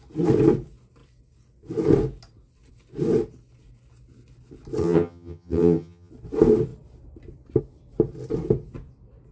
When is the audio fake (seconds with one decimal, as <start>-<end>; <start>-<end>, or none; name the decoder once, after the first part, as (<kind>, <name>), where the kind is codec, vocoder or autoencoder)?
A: 4.8-6.1 (vocoder, HiFi-GAN)